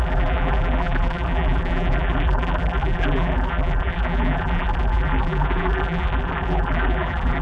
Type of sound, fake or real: fake